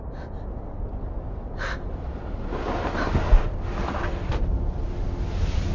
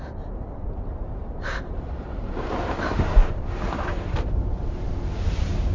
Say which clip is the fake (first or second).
second